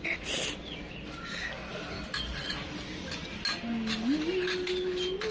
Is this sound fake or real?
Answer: real